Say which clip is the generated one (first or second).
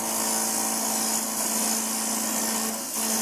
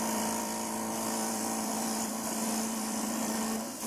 second